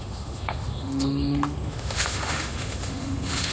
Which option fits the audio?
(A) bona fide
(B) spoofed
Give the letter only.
B